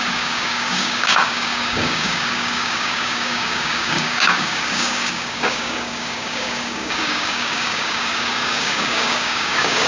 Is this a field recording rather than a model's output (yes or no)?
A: no